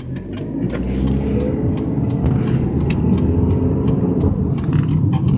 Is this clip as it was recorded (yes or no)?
yes